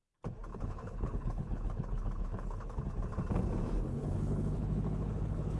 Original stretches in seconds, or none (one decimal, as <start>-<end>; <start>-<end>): 0.0-0.5; 2.8-3.9